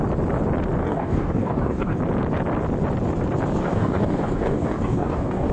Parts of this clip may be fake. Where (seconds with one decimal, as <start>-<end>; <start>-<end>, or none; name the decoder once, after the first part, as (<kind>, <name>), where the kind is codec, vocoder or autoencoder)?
0.8-2.0 (codec, DAC); 3.6-5.5